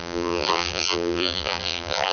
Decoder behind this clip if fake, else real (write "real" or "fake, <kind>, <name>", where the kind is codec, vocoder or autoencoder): fake, vocoder, BigVGAN v2